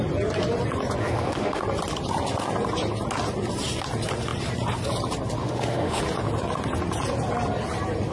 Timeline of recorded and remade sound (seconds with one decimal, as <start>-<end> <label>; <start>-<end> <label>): 0.0-1.0 recorded; 1.0-1.6 remade; 1.6-5.4 recorded; 5.4-6.0 remade; 6.0-8.1 recorded